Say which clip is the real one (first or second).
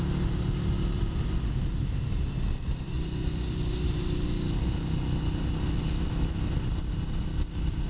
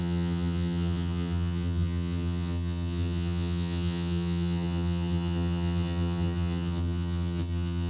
first